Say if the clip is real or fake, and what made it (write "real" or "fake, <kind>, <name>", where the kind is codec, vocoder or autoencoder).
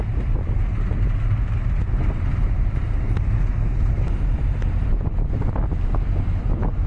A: real